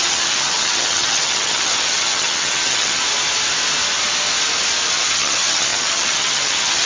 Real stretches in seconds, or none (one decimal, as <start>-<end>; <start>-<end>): 3.0-4.9